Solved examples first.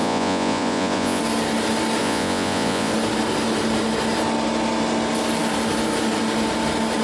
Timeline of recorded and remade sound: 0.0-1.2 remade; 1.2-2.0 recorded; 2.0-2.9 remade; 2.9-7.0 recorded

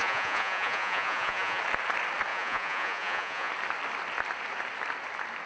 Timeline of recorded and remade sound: 0.0-1.6 remade; 1.6-2.3 recorded; 2.3-3.5 remade; 3.5-5.5 recorded

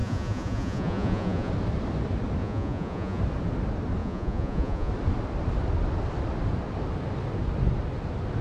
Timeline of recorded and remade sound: 0.0-1.5 remade; 1.5-2.4 recorded; 2.4-3.2 remade; 3.2-4.0 recorded; 4.0-4.9 remade; 4.9-8.4 recorded

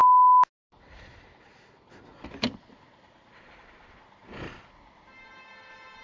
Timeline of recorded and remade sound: 0.0-6.0 recorded

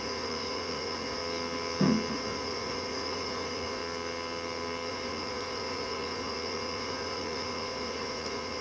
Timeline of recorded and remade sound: 0.0-1.2 remade; 1.2-2.1 recorded; 2.1-3.8 remade; 3.8-4.9 recorded; 4.9-8.6 remade

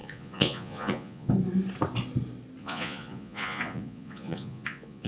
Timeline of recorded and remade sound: 0.0-1.3 remade; 1.3-2.6 recorded; 2.6-5.1 remade

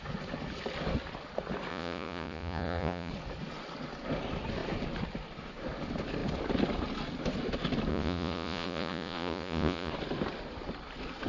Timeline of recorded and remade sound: 0.0-1.7 recorded; 1.7-3.1 remade; 3.1-7.9 recorded; 7.9-9.9 remade; 9.9-11.3 recorded